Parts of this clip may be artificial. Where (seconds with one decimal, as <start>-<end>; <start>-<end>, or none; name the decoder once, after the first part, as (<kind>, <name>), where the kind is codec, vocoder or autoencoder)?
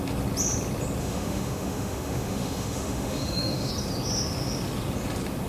1.0-3.7 (autoencoder, DAC-VAE)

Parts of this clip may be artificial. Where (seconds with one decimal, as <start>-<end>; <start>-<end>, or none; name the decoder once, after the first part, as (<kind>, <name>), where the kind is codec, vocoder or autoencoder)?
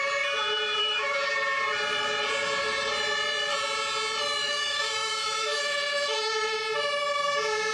0.8-1.3 (autoencoder, DAC-VAE); 4.4-6.6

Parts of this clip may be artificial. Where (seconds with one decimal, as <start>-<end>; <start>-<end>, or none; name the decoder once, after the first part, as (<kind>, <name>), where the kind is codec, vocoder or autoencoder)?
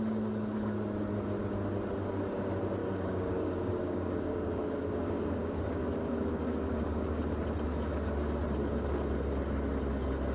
2.8-7.2 (codec, DAC)